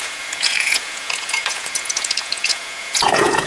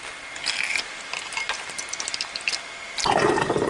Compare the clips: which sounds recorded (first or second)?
second